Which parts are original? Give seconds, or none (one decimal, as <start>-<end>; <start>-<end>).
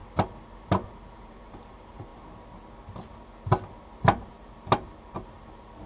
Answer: 0.0-0.9; 2.1-5.9